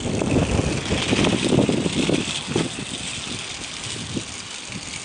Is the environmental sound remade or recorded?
recorded